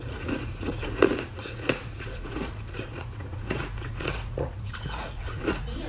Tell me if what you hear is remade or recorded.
remade